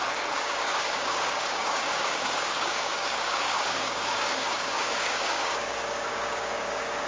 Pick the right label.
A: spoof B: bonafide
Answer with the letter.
A